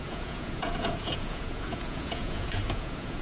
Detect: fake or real fake